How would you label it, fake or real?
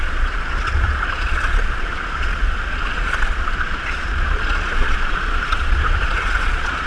fake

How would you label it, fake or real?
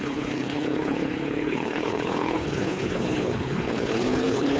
fake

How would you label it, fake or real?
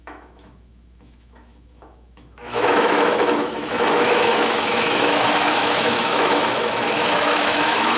fake